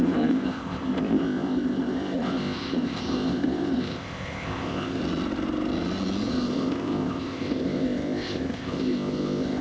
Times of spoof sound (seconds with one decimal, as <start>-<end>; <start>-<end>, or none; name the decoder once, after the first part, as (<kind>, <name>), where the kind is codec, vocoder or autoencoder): 0.0-5.0 (codec, ZipCodec); 6.3-9.6